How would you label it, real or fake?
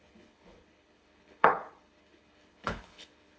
fake